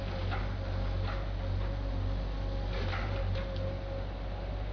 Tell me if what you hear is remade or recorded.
recorded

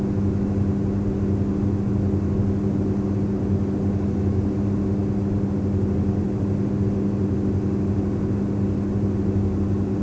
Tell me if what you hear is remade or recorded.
recorded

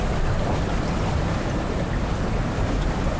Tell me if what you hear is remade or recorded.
recorded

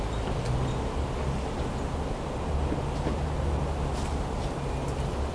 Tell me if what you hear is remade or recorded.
recorded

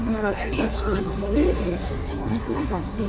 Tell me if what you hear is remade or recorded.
remade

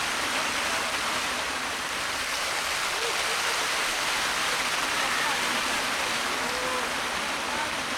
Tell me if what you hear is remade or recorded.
recorded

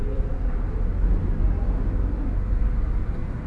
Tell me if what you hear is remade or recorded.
recorded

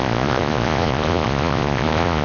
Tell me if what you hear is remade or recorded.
remade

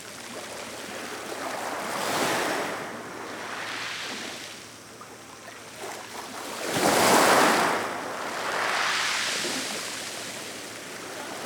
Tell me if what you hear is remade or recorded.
recorded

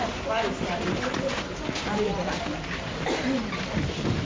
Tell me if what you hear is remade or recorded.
recorded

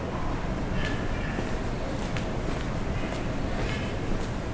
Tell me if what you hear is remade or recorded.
recorded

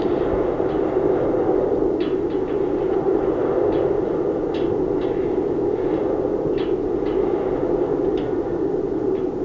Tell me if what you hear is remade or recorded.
recorded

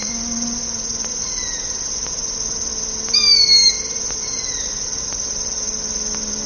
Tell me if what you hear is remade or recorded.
recorded